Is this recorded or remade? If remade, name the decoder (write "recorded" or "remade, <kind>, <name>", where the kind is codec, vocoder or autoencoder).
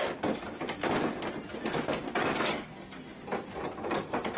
recorded